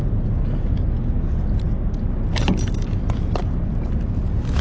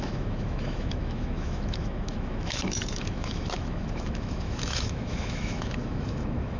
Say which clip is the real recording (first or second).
first